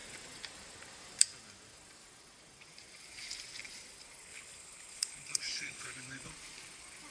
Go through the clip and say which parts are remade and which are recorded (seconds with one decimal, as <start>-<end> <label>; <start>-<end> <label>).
0.0-4.2 recorded; 4.2-6.3 remade; 6.3-7.1 recorded